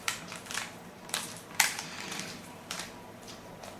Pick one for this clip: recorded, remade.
remade